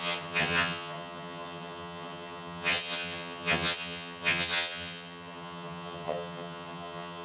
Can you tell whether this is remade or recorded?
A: remade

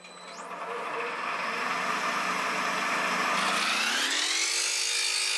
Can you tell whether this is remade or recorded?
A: recorded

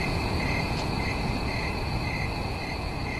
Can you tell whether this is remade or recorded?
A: remade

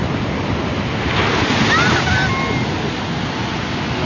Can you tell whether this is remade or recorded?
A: recorded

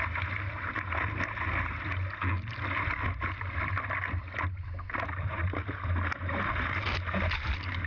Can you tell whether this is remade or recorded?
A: recorded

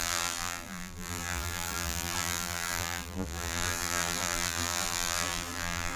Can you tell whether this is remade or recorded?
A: remade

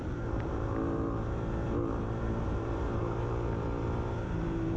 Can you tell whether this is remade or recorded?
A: remade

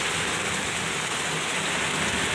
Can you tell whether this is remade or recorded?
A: recorded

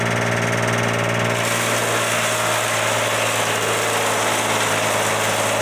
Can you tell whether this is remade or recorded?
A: recorded